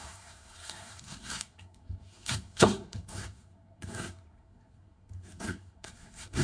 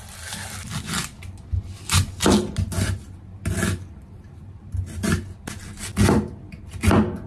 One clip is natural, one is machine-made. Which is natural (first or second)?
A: second